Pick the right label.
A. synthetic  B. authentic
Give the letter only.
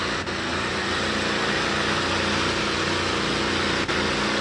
B